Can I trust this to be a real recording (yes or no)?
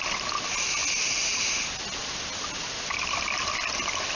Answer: yes